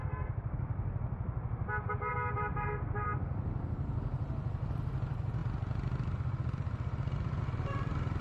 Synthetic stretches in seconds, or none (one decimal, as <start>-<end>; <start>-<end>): none